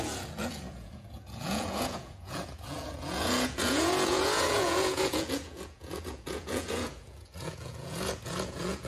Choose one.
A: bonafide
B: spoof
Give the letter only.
B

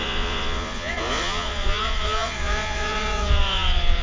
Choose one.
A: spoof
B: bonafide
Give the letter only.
A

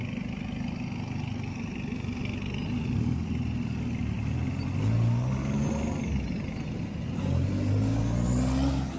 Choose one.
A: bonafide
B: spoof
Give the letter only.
A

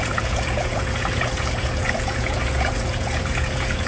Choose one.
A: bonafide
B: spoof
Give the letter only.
B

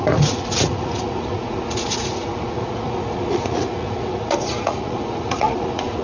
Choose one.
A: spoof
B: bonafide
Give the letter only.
A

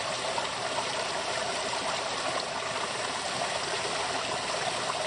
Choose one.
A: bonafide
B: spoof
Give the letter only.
A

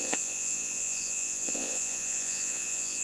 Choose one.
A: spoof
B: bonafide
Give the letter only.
A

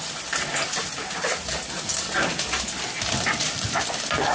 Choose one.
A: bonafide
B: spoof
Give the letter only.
A